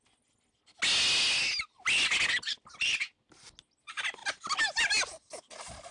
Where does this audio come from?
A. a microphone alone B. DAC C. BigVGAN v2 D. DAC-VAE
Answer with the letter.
A